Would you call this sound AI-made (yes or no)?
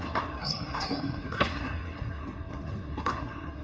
yes